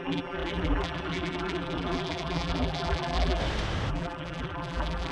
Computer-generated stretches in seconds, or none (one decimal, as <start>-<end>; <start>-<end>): 0.0-3.4; 3.9-5.1